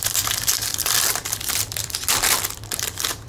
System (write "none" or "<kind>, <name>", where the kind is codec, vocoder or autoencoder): vocoder, BigVGAN v2